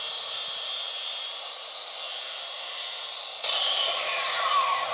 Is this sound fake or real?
fake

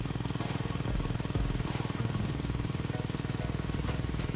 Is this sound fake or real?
real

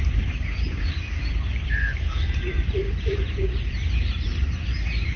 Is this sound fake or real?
fake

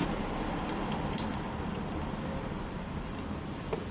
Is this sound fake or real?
fake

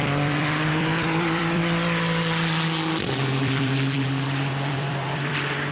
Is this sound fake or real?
fake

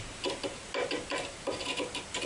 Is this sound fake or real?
real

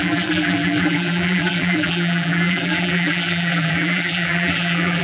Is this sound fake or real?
fake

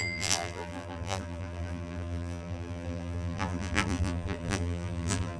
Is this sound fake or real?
fake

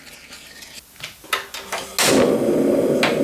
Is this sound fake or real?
real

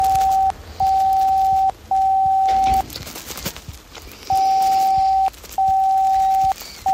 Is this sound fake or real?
real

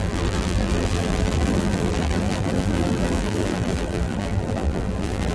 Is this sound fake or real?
fake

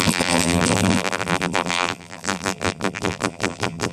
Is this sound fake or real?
fake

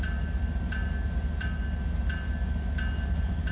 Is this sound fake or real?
real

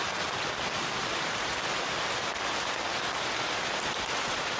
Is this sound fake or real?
real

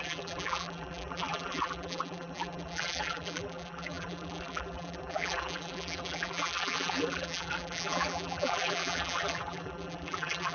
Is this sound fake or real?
fake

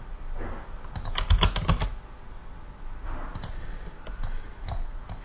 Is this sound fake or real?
real